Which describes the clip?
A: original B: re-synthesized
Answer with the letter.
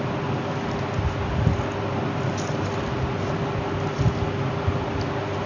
A